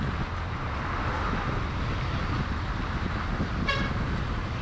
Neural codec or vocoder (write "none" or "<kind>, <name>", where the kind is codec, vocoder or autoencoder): none